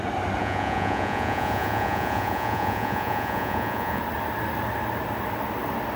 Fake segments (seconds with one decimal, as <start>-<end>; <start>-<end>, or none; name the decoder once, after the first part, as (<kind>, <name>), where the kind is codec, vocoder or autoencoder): 0.4-4.0 (vocoder, Vocos)